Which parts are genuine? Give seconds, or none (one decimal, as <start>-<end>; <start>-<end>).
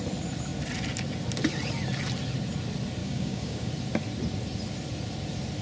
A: 0.0-3.0; 3.7-5.6